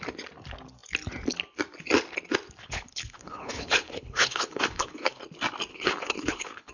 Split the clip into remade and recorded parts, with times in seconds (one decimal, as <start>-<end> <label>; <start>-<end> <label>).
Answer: 0.0-2.6 recorded; 2.6-5.2 remade; 5.2-5.7 recorded; 5.7-6.7 remade